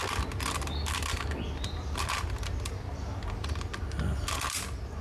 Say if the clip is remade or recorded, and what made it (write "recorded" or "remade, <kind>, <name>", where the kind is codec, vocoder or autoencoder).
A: recorded